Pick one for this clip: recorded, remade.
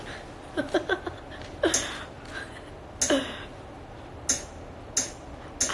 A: recorded